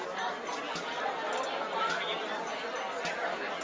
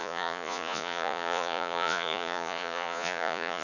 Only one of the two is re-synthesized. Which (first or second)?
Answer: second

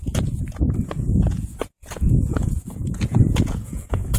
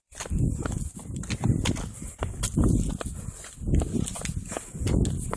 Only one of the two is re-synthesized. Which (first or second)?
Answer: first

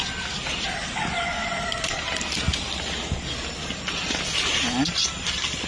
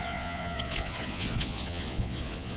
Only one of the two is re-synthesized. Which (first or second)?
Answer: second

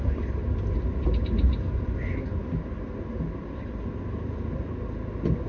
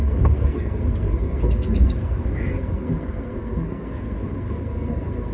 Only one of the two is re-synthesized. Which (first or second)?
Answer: second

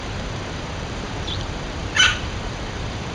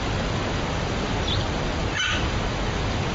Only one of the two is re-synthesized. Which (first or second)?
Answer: first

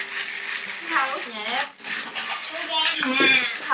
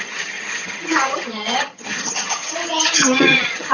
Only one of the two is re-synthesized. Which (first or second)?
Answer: second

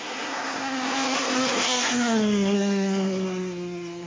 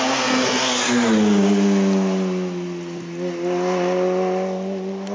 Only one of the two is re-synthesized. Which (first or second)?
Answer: first